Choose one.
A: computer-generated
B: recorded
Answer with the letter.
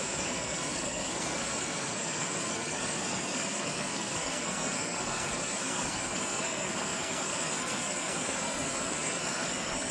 A